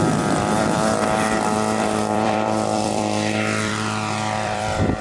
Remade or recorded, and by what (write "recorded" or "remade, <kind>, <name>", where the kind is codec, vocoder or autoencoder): remade, vocoder, BigVGAN v2